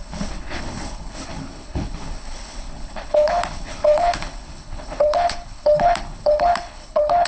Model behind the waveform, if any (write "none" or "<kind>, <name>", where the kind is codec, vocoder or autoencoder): codec, HILCodec